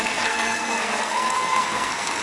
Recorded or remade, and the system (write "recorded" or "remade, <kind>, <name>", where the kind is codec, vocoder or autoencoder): remade, codec, SNAC